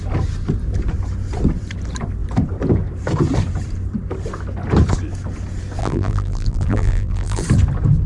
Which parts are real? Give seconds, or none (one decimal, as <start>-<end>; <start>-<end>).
0.0-5.8; 7.4-8.1

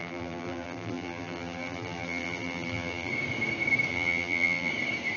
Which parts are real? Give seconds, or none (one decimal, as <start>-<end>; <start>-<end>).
3.1-3.9; 4.7-5.2

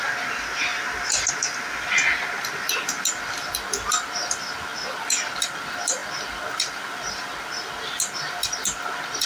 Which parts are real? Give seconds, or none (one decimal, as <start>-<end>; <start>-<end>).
0.0-9.3

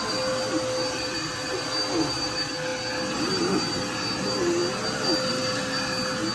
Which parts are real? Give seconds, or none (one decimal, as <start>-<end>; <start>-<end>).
0.0-6.3